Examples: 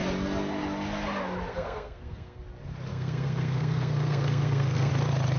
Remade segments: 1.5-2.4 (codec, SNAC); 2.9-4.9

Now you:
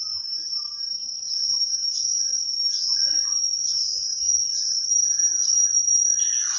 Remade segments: none

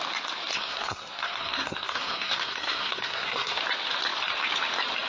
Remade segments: 0.5-3.6 (codec, SNAC)

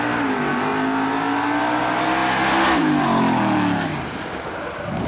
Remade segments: none

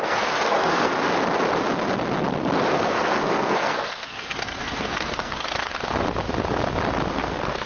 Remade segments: 0.0-0.9 (codec, SNAC); 2.7-5.7; 7.1-7.7

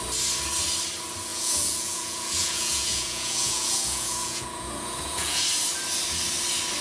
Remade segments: 1.3-5.4 (vocoder, Vocos)

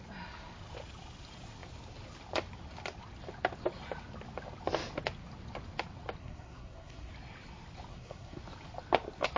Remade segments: 6.2-7.1 (codec, SNAC); 7.9-8.4

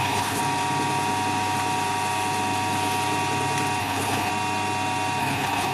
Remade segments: 0.0-0.4 (codec, HILCodec); 3.8-4.3; 5.2-5.7